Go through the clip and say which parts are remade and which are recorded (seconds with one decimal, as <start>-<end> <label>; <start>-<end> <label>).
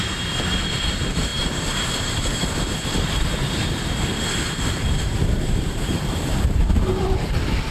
0.0-4.1 remade; 4.1-5.0 recorded; 5.0-7.7 remade